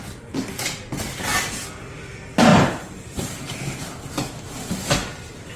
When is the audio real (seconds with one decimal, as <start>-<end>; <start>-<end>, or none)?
0.0-2.5; 3.5-5.6